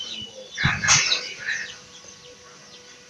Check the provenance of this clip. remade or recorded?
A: recorded